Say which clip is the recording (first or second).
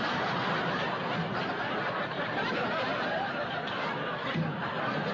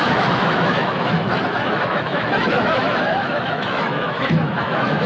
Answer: first